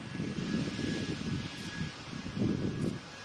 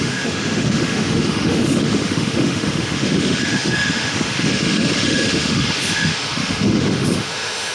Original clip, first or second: first